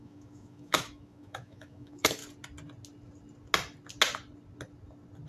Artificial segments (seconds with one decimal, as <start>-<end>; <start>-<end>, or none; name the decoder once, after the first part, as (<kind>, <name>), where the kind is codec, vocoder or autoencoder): 0.0-2.2 (autoencoder, DAC-VAE)